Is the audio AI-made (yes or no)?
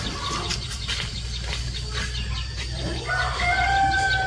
no